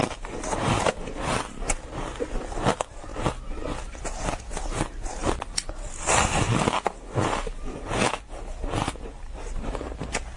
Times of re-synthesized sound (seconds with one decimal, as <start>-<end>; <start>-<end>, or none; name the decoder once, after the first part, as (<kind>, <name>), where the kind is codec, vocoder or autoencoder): none